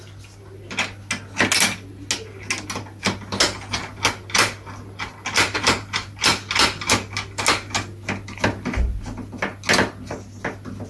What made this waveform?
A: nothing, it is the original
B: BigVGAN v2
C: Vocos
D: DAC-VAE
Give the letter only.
A